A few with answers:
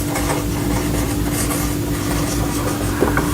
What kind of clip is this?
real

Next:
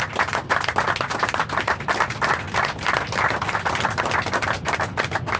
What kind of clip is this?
real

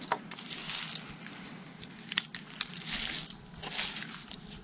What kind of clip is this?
real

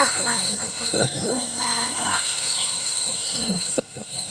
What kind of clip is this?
fake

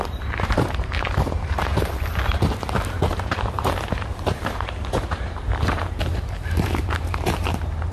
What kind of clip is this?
fake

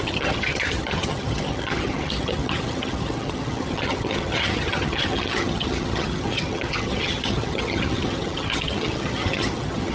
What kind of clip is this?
fake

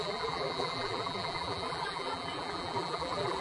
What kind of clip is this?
fake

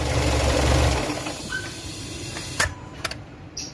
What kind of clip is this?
fake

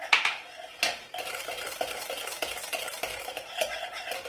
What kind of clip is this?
fake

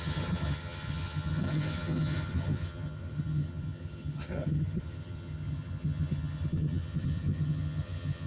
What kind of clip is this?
fake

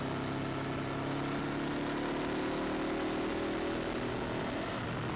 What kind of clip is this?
real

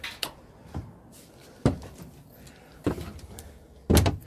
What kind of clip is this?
real